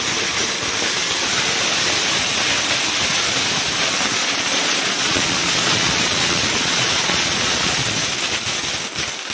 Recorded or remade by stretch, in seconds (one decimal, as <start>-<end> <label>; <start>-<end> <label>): 0.0-4.2 recorded; 4.2-7.9 remade; 7.9-9.3 recorded